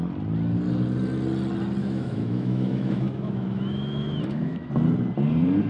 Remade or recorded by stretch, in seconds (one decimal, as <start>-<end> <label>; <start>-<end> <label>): 0.0-1.8 recorded; 1.8-4.7 remade; 4.7-5.7 recorded

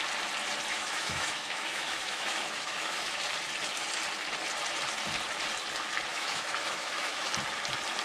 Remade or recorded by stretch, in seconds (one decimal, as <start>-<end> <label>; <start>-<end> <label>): 0.0-0.7 recorded; 0.7-3.2 remade; 3.2-6.1 recorded; 6.1-7.3 remade; 7.3-8.0 recorded

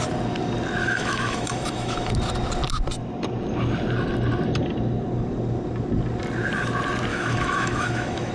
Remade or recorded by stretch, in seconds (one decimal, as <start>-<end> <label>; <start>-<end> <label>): 0.0-0.8 recorded; 0.8-2.1 remade; 2.1-7.1 recorded; 7.1-8.3 remade

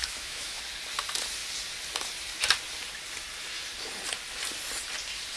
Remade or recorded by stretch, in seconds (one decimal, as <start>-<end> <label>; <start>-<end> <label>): 0.0-0.6 remade; 0.6-5.4 recorded

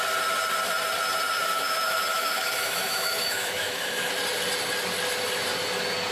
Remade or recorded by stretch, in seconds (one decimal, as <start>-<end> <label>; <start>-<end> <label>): 0.0-1.4 recorded; 1.4-4.1 remade; 4.1-6.1 recorded

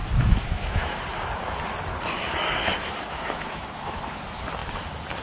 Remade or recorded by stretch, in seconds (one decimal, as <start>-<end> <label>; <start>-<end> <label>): 0.0-1.0 remade; 1.0-2.6 recorded; 2.6-4.0 remade; 4.0-5.2 recorded

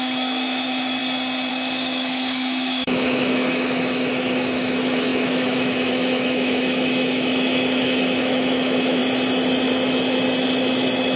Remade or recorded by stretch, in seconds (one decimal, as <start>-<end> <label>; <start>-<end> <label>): 0.0-1.0 remade; 1.0-1.5 recorded; 1.5-9.0 remade; 9.0-11.2 recorded